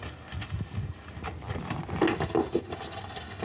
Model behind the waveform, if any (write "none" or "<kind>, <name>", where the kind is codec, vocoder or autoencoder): none